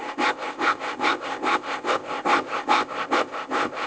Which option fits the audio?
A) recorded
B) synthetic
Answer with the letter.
B